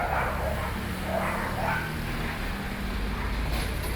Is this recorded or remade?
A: recorded